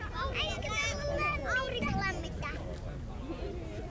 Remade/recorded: recorded